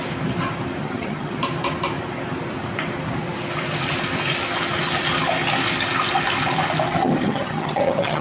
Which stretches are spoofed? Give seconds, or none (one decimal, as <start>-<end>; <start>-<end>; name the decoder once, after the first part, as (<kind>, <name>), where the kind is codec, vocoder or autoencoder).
0.8-1.4 (vocoder, HiFi-GAN); 6.9-8.2